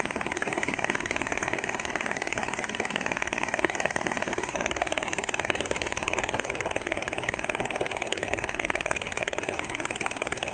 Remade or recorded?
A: remade